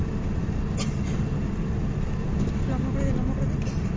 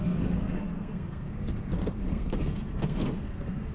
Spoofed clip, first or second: second